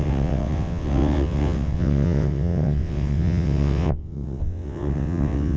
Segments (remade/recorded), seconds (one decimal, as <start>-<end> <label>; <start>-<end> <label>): 0.0-5.6 remade